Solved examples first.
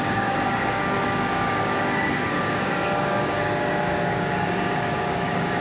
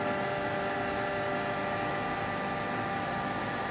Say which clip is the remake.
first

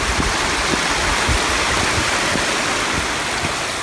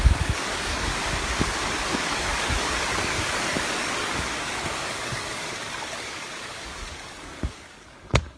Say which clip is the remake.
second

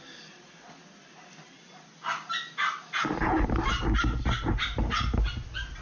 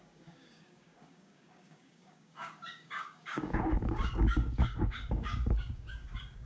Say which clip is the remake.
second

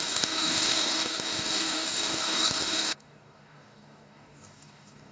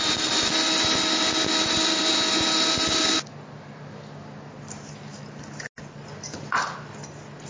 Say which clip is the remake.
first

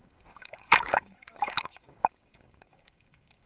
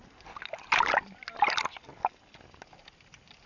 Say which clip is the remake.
first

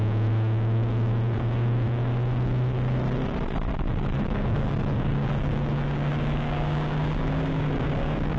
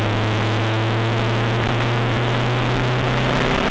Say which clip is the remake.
first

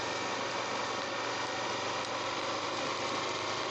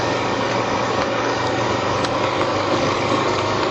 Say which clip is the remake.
second